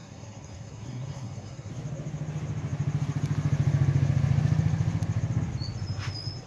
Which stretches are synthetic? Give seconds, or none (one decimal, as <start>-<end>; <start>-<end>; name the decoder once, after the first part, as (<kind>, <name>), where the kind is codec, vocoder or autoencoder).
0.0-1.7 (codec, SNAC)